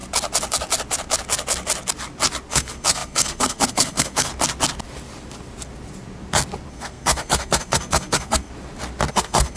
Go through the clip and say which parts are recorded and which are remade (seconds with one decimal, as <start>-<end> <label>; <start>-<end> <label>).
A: 0.0-2.5 recorded; 2.5-4.3 remade; 4.3-6.7 recorded; 6.7-8.5 remade; 8.5-9.1 recorded; 9.1-9.6 remade

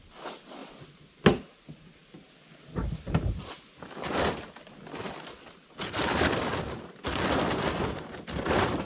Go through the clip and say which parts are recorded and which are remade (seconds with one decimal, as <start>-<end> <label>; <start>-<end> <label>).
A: 0.0-8.9 recorded

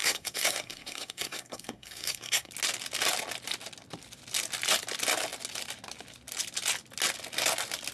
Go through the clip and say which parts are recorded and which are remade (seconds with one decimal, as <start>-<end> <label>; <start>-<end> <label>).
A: 0.0-2.5 remade; 2.5-7.9 recorded